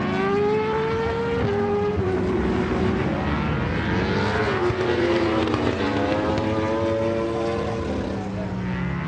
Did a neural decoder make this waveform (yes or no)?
no